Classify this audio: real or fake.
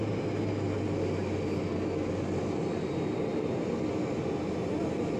real